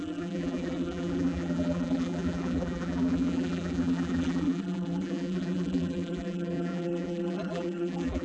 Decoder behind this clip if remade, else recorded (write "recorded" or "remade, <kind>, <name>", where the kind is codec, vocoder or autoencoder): remade, vocoder, BigVGAN v2